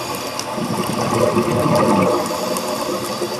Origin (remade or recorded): recorded